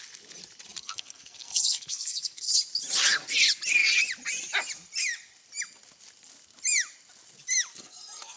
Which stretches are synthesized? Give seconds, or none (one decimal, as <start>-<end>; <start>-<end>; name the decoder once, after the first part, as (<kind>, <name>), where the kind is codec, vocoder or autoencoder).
0.8-2.5 (codec, SNAC); 7.7-8.4